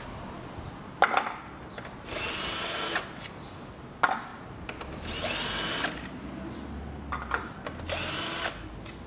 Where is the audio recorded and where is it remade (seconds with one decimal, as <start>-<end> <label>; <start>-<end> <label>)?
0.0-9.1 recorded

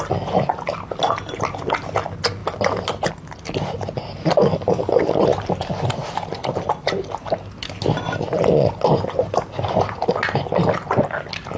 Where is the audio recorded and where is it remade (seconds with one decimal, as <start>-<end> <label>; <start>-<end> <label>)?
0.0-4.4 recorded; 4.4-5.0 remade; 5.0-11.6 recorded

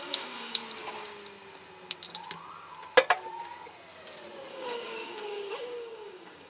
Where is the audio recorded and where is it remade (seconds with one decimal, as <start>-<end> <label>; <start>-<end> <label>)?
0.0-0.6 remade; 0.6-4.5 recorded; 4.5-6.5 remade

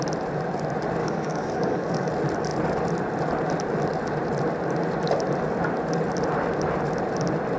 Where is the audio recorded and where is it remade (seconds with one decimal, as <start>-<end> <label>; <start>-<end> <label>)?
0.0-1.0 recorded; 1.0-2.1 remade; 2.1-7.6 recorded

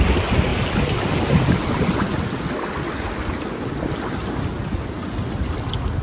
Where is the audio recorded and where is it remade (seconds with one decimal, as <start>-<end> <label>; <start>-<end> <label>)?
0.0-6.0 recorded